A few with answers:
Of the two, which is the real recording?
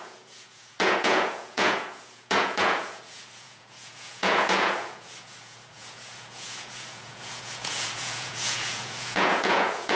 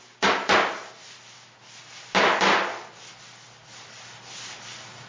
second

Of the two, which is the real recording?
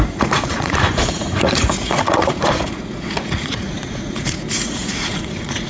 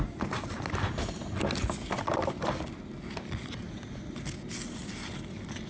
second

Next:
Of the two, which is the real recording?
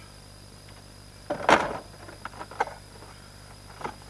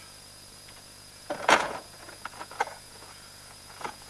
first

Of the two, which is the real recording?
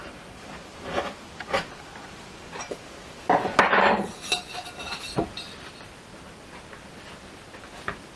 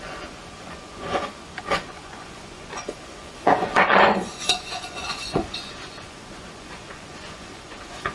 first